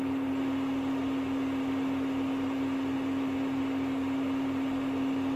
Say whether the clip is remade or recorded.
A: remade